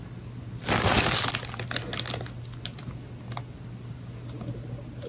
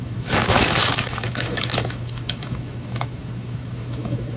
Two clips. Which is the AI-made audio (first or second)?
second